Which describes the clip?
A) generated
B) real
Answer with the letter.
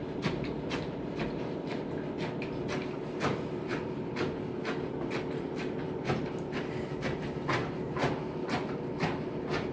A